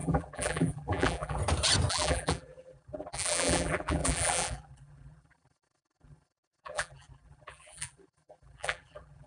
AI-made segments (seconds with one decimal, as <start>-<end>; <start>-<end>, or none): 0.0-1.4; 1.9-9.3